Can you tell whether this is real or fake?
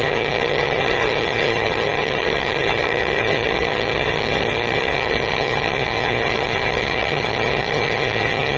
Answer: fake